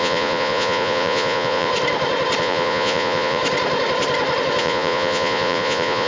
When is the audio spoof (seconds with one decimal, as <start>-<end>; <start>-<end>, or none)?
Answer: 0.0-1.7; 2.4-3.4; 4.6-6.1